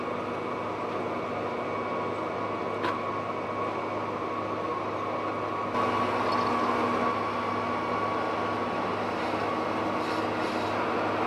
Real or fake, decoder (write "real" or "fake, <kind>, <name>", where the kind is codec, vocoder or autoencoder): real